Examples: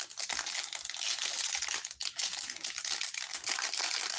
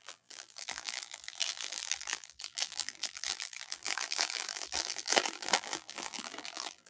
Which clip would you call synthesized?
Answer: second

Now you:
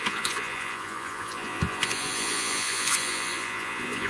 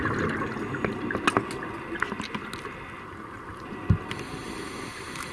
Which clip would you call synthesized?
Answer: first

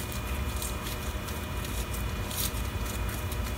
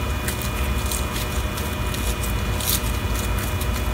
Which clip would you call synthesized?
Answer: first